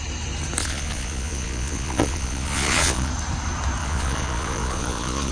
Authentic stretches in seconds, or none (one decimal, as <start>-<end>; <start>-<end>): 0.0-0.6; 3.1-3.8